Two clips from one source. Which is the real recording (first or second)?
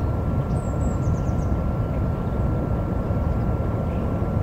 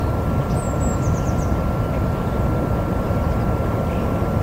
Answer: second